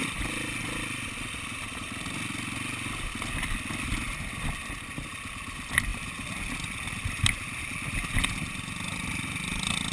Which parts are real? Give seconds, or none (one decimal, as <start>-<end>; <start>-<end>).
0.0-9.9